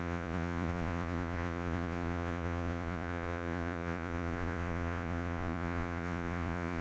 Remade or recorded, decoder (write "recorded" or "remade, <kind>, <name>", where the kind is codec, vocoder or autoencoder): remade, vocoder, Vocos